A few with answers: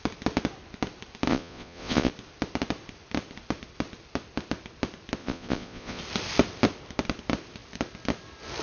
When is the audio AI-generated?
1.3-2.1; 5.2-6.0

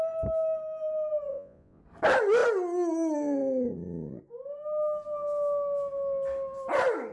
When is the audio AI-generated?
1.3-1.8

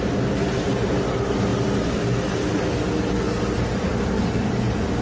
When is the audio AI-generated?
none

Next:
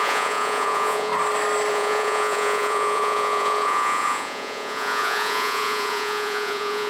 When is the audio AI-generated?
0.0-1.1; 1.7-6.9